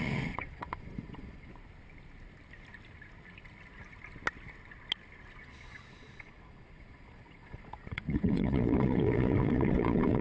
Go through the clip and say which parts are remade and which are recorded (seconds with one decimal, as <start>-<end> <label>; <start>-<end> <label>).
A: 0.0-1.5 remade; 1.5-5.4 recorded; 5.4-10.2 remade